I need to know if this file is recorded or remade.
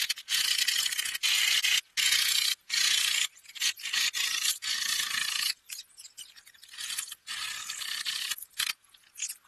remade